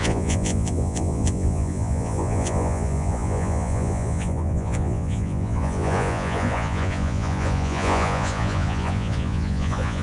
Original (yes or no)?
no